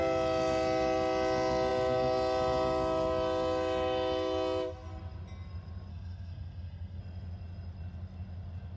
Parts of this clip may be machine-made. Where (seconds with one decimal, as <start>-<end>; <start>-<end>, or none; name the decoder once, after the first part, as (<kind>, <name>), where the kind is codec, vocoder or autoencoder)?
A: 5.9-7.0 (codec, SNAC)